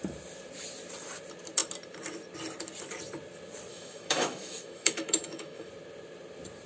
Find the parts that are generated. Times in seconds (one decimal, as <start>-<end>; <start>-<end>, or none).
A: 3.7-5.7